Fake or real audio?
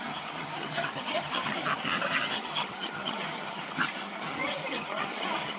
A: fake